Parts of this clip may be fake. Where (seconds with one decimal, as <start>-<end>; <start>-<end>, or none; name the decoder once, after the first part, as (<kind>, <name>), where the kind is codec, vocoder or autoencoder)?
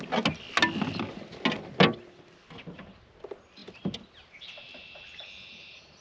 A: none